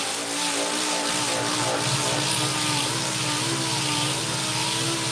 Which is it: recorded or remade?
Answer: recorded